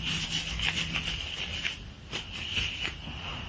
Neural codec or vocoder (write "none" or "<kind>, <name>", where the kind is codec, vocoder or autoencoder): none